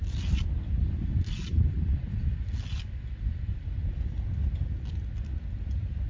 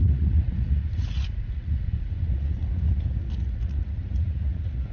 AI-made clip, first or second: second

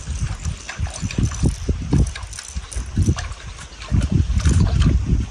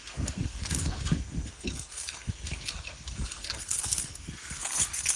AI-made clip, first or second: second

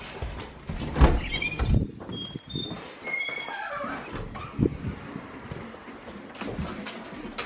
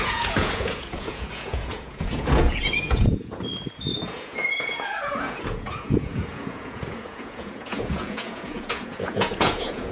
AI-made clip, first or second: second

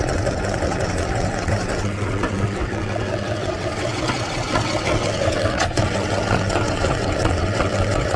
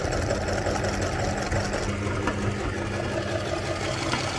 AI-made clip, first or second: first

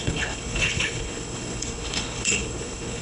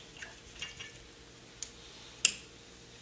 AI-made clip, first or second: first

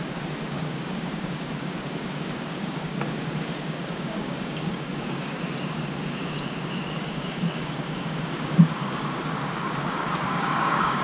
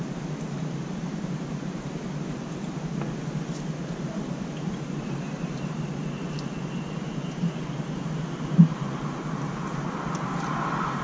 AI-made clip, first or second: first